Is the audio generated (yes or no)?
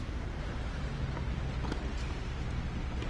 no